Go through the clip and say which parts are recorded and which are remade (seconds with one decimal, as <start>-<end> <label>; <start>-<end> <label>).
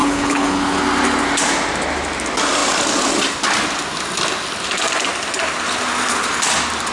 0.0-0.8 remade; 0.8-6.9 recorded